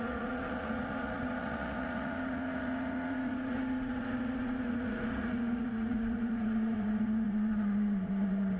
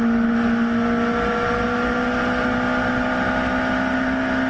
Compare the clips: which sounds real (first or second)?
second